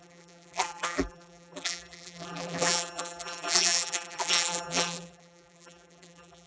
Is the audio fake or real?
fake